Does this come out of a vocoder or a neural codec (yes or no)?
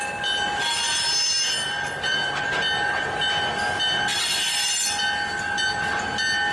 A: no